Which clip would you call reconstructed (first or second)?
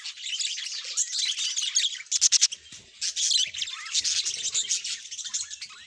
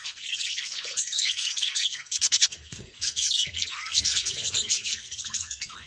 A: second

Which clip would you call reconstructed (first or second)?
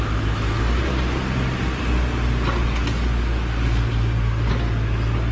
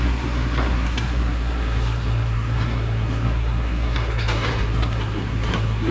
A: second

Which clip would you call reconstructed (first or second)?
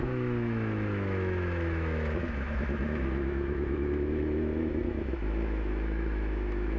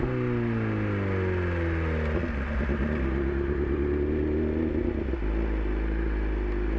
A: first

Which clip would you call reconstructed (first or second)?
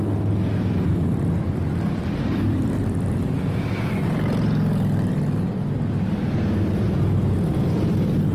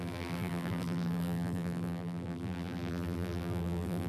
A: second